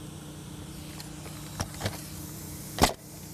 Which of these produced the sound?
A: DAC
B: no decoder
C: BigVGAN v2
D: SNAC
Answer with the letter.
B